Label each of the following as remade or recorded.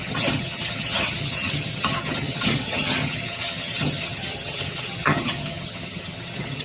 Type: remade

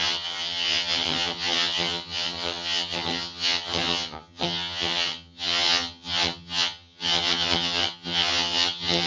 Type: remade